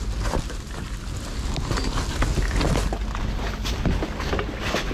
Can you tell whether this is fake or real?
real